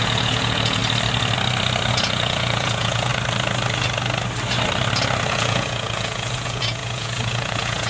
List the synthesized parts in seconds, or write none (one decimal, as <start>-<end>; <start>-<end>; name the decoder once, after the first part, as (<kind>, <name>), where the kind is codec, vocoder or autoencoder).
0.0-0.8 (vocoder, Vocos); 1.9-3.1; 5.3-7.9